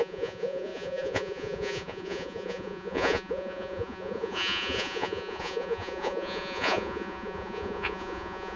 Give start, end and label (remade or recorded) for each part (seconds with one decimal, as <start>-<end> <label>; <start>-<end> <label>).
0.0-8.6 remade